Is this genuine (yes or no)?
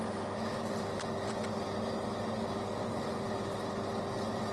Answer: yes